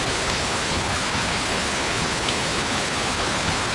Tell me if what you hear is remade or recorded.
remade